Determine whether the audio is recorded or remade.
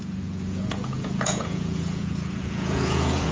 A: remade